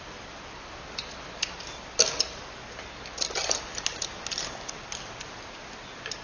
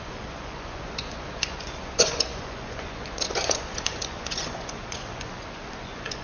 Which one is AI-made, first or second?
second